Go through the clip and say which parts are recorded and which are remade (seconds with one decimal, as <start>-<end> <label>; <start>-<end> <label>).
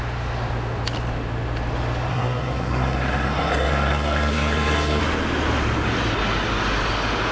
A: 0.0-2.1 recorded; 2.1-5.0 remade; 5.0-7.3 recorded